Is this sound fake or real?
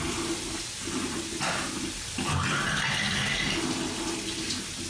real